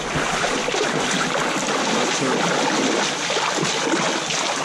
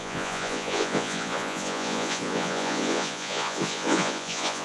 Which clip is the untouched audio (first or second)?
first